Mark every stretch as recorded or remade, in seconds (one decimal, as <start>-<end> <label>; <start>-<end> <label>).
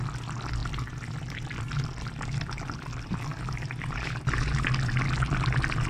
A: 0.0-0.6 recorded; 0.6-4.1 remade; 4.1-5.9 recorded